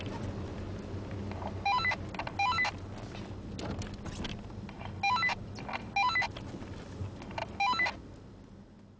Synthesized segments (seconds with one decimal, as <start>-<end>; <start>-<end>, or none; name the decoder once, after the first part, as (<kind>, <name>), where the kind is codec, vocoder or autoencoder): none